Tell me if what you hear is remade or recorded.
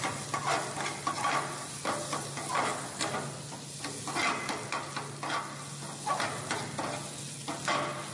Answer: recorded